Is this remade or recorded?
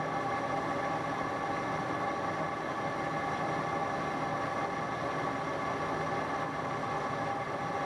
recorded